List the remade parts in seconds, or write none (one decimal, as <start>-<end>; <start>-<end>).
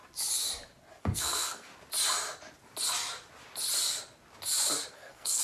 1.0-1.7; 4.9-5.4